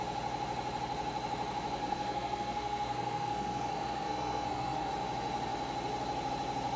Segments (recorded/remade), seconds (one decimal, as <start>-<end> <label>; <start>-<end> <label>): 0.0-1.8 recorded; 1.8-4.9 remade; 4.9-6.8 recorded